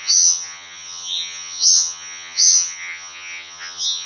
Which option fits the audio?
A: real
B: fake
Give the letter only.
B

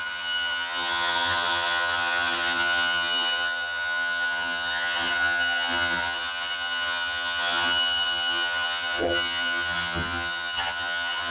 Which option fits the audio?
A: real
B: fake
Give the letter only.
B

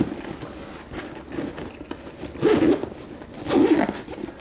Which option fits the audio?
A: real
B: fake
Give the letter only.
A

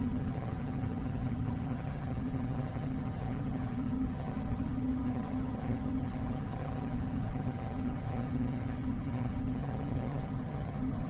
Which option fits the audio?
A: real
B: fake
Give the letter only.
B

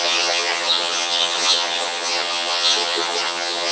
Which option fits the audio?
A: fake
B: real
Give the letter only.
A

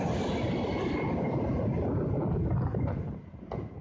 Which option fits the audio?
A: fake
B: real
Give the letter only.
B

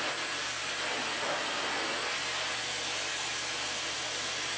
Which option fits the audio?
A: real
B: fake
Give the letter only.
A